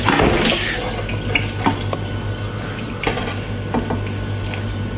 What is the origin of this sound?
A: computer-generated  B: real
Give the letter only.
B